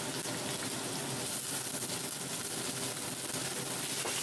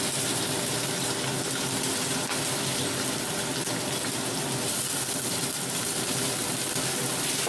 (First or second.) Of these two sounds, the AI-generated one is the second